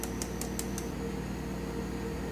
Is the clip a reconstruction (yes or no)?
no